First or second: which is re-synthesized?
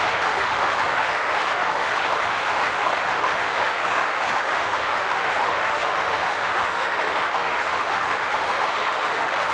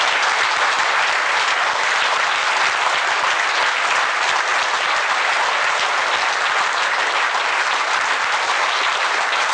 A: first